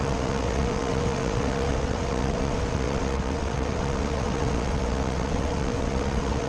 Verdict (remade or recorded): remade